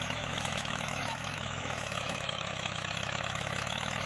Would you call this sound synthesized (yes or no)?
yes